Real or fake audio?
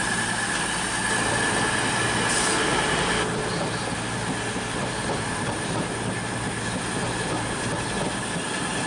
real